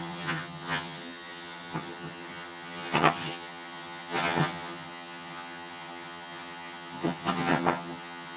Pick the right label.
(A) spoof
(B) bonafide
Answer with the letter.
A